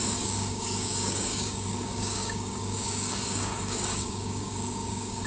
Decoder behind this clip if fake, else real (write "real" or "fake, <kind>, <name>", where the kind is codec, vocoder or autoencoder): fake, codec, DAC